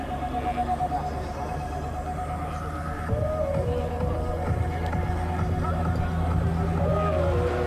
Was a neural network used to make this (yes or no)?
no